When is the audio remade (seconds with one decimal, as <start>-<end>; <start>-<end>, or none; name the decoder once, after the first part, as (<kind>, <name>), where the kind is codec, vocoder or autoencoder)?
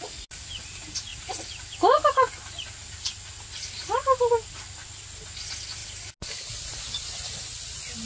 none